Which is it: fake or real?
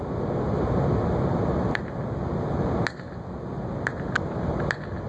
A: real